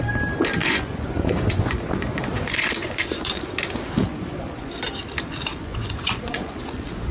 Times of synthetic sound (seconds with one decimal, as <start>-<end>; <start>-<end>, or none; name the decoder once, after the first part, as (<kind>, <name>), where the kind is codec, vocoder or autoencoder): 0.6-3.5 (vocoder, Vocos); 4.1-4.7; 5.5-7.1